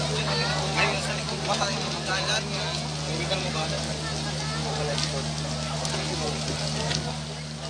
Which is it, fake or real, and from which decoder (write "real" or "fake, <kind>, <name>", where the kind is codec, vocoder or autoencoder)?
real